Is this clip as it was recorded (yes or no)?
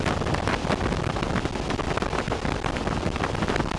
yes